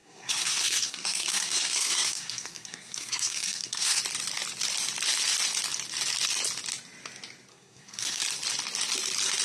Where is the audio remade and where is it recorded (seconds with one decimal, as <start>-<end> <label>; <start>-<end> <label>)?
0.0-4.0 remade; 4.0-7.5 recorded; 7.5-8.2 remade; 8.2-9.4 recorded